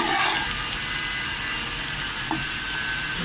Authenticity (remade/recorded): recorded